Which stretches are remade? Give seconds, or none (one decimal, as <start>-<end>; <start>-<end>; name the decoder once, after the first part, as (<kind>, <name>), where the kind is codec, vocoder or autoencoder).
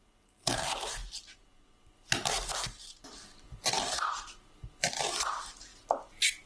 none